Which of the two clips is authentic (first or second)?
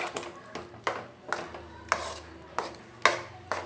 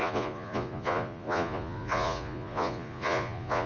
first